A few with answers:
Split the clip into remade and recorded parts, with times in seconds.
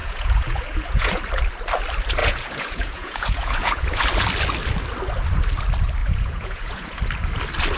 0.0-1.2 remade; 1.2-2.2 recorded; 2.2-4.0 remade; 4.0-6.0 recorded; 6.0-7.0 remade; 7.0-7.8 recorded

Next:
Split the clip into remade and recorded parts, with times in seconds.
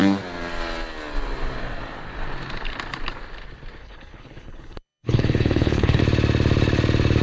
0.0-3.8 recorded; 3.8-6.0 remade; 6.0-7.2 recorded